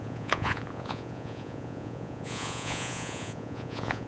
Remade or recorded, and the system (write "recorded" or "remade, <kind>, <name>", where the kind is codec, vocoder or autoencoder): remade, vocoder, Vocos